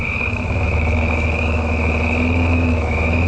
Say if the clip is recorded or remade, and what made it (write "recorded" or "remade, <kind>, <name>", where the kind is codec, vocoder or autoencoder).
remade, autoencoder, DAC-VAE